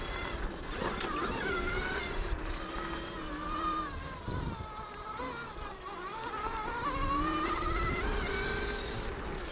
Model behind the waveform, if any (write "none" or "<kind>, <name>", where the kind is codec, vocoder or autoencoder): none